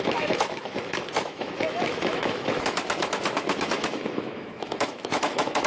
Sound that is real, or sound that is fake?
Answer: fake